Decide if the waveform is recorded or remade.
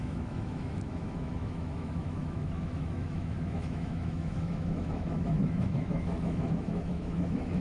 remade